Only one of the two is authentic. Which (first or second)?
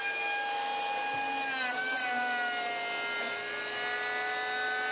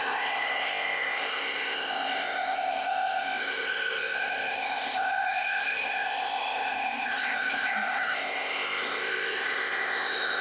first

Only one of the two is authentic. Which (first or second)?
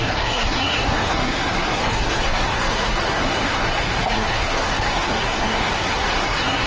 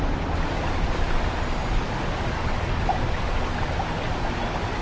second